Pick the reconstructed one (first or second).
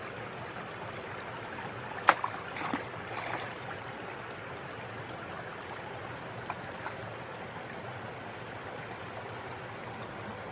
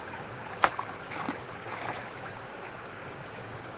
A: second